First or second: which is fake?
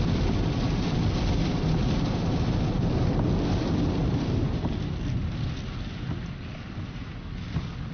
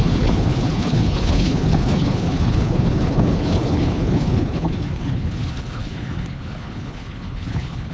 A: second